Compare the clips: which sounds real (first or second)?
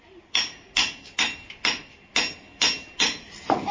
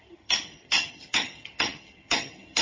first